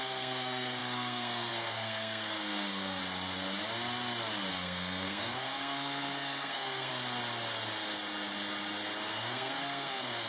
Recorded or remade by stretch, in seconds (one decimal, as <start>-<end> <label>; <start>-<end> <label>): 0.0-3.0 remade; 3.0-4.5 recorded; 4.5-6.9 remade; 6.9-9.1 recorded; 9.1-10.3 remade